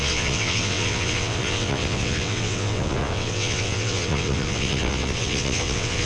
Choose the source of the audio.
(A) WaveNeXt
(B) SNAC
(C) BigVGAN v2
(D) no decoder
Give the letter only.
A